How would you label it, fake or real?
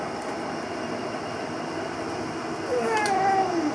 real